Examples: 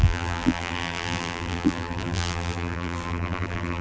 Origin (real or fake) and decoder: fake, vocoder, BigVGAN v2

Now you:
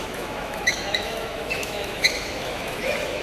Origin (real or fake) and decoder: fake, autoencoder, DAC-VAE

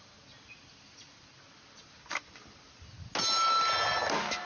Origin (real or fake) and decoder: real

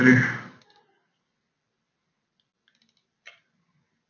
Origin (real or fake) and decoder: real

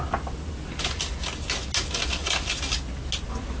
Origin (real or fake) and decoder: real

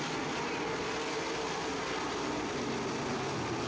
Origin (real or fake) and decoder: real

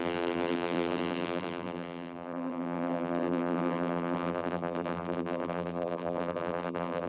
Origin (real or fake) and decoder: fake, vocoder, BigVGAN v2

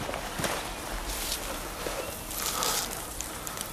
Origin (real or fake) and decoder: fake, vocoder, BigVGAN v2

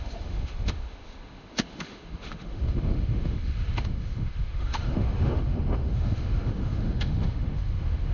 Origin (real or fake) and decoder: fake, autoencoder, DAC-VAE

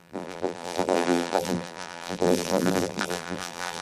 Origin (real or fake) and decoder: fake, vocoder, BigVGAN v2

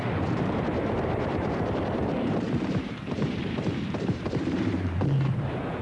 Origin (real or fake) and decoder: fake, vocoder, BigVGAN v2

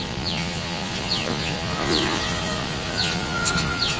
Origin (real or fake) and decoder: fake, vocoder, Vocos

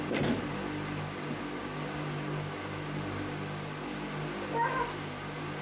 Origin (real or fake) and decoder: real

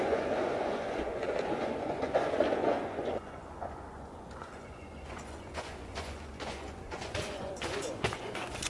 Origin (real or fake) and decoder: fake, vocoder, Vocos